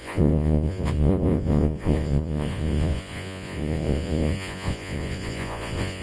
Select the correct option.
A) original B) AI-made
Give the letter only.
B